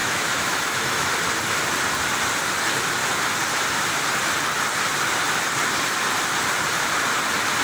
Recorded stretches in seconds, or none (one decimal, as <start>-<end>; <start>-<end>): 1.1-7.6

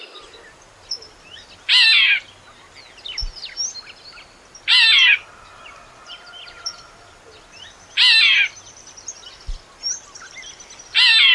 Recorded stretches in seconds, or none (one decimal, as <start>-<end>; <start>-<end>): 0.0-11.3

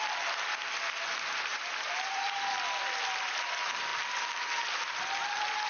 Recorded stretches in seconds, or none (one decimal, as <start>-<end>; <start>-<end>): 0.0-1.5; 2.5-5.7

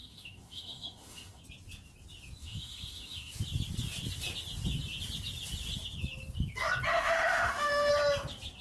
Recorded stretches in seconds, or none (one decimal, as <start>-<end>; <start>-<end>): 1.4-2.4; 3.3-6.9; 7.9-8.6

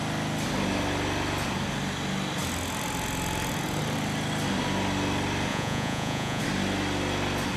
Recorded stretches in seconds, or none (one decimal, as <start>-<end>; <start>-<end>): 0.0-5.5; 6.4-7.6